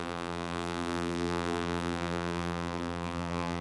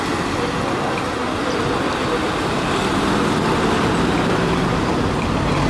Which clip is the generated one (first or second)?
first